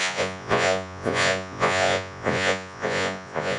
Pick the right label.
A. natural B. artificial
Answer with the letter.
B